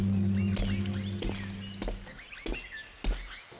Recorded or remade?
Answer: recorded